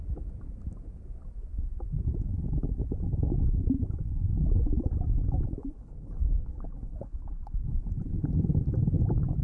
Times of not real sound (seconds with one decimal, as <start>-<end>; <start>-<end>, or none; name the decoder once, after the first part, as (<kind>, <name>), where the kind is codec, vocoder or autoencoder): 5.6-7.7 (codec, HILCodec)